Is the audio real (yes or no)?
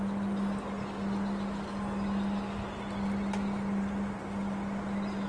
yes